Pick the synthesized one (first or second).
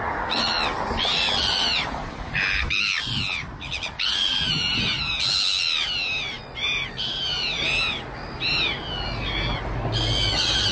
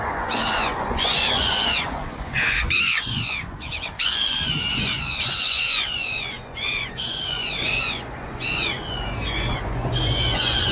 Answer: second